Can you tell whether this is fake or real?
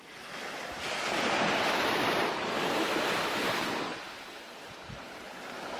real